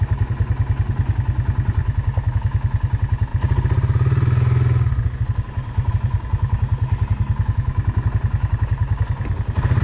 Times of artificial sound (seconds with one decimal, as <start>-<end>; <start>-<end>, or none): none